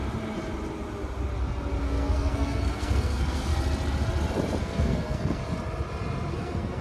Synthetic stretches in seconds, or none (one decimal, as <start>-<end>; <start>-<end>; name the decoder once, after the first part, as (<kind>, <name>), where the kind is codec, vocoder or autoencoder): 1.8-3.5 (codec, SNAC); 4.6-5.4; 6.3-6.8